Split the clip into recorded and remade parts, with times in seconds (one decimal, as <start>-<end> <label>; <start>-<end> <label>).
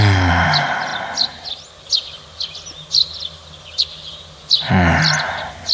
0.0-5.7 recorded